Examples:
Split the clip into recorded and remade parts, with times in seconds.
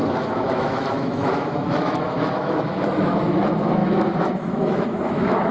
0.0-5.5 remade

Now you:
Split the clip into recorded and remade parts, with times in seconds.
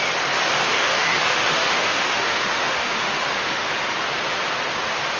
0.0-0.6 recorded; 0.6-3.7 remade; 3.7-5.2 recorded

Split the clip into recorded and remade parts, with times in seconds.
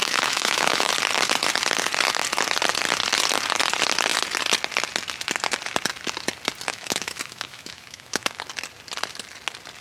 0.0-0.9 remade; 0.9-6.7 recorded; 6.7-8.3 remade; 8.3-9.8 recorded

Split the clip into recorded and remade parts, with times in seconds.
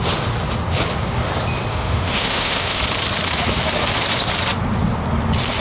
0.0-1.7 recorded; 1.7-2.8 remade; 2.8-5.6 recorded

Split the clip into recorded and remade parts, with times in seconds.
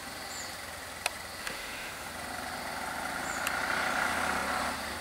0.0-1.4 recorded; 1.4-2.1 remade; 2.1-5.0 recorded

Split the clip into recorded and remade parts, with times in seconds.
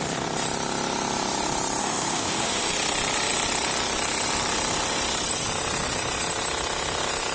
0.0-1.8 recorded; 1.8-2.7 remade; 2.7-7.3 recorded